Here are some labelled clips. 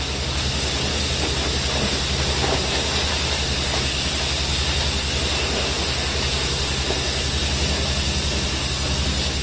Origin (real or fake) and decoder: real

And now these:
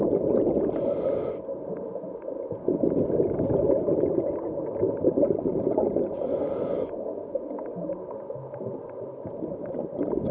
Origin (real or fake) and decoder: real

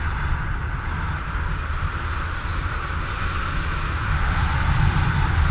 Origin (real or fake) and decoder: real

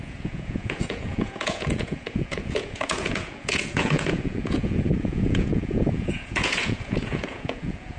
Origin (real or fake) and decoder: fake, vocoder, Vocos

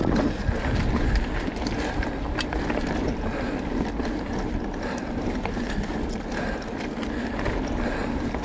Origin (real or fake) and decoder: real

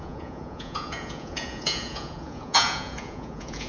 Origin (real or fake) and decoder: fake, vocoder, Vocos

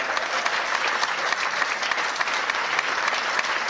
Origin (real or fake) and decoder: real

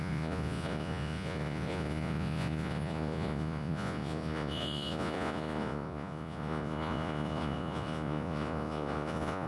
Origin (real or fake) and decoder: fake, vocoder, Vocos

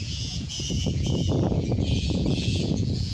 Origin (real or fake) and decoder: fake, vocoder, Vocos